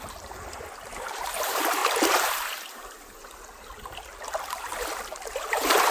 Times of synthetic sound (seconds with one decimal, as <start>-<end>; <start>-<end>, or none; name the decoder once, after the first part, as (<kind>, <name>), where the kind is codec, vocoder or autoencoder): 0.0-1.8 (vocoder, BigVGAN v2); 5.3-5.9